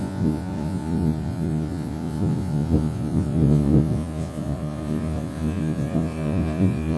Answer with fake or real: fake